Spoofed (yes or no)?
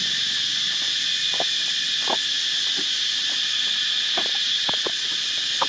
no